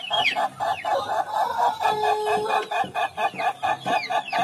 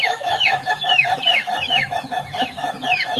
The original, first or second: first